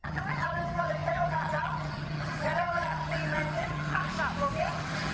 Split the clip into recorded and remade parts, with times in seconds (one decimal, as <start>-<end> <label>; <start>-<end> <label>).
0.0-4.1 remade; 4.1-4.6 recorded; 4.6-5.1 remade